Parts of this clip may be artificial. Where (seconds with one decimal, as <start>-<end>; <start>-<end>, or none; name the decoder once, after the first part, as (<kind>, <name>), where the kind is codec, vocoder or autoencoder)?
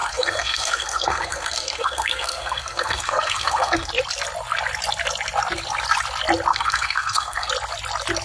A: 0.0-3.9 (codec, SNAC); 6.5-7.5